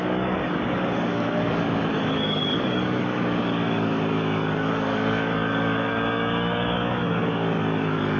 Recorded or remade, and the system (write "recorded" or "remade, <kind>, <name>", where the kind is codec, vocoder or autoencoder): remade, codec, DAC